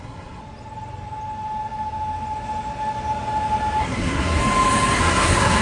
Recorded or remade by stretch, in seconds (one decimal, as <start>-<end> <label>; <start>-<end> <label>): 0.0-0.4 remade; 0.4-3.8 recorded; 3.8-4.4 remade; 4.4-5.0 recorded; 5.0-5.6 remade